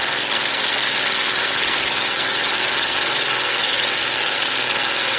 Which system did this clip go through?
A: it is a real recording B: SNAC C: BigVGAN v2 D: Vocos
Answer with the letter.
B